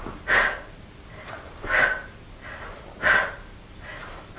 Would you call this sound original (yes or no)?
yes